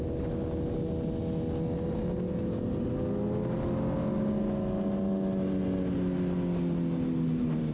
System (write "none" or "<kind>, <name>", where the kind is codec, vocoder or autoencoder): none